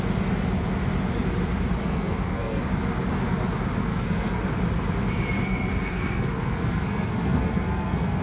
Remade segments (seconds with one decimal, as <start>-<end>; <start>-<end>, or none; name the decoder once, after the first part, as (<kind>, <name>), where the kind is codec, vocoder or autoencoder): 1.8-2.6 (codec, SNAC); 3.8-4.4; 5.4-8.2